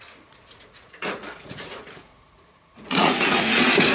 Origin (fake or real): fake